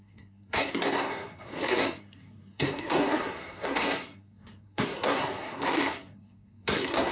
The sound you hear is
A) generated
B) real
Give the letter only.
A